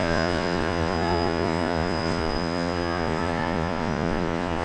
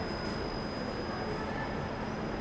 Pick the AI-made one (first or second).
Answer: first